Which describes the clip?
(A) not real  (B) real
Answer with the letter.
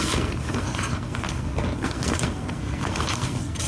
A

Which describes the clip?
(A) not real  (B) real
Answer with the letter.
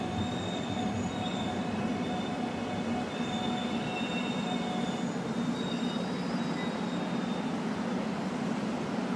B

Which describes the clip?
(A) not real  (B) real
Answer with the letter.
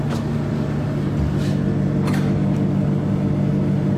B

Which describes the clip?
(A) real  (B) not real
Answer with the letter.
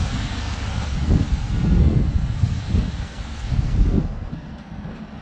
B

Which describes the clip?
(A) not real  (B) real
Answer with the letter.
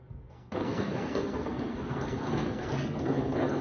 A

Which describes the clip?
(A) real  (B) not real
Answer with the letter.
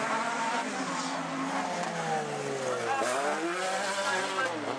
A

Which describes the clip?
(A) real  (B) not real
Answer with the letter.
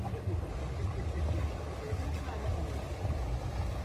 A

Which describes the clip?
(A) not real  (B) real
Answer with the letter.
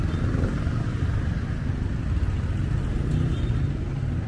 B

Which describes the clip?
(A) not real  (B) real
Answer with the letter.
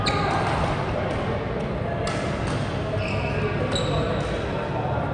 B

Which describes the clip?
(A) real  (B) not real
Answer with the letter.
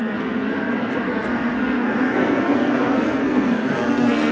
B